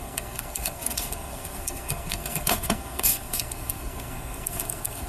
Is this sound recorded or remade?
remade